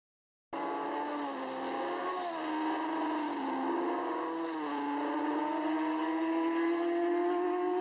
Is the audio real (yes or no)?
yes